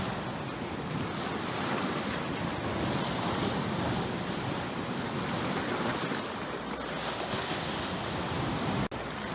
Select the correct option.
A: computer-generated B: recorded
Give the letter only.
B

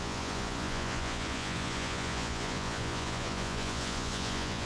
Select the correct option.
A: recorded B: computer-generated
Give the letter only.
B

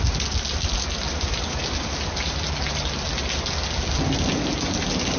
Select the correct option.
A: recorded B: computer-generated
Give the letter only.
A